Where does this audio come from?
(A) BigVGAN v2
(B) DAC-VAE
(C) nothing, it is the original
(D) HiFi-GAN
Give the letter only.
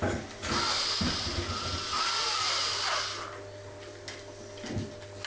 C